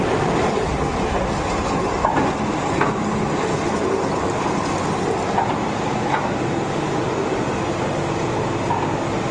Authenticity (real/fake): real